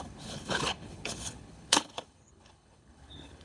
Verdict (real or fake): fake